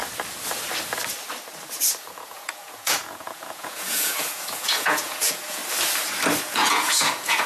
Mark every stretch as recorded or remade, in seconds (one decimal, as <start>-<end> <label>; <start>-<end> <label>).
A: 0.0-2.2 recorded; 2.2-5.6 remade; 5.6-6.4 recorded; 6.4-7.5 remade